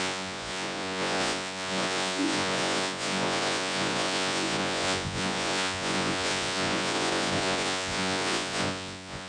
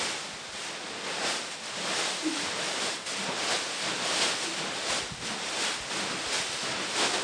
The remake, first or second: first